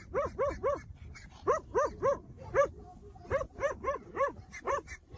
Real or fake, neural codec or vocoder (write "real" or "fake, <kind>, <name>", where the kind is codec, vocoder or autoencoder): real